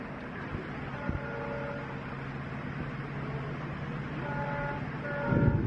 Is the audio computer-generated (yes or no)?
no